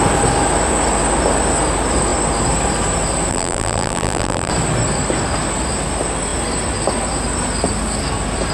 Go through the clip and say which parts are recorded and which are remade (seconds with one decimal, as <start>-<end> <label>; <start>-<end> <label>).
0.0-3.3 recorded; 3.3-4.5 remade; 4.5-8.5 recorded